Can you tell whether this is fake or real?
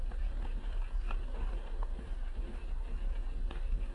fake